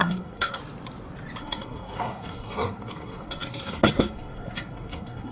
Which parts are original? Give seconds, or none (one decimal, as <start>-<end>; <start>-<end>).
0.6-1.4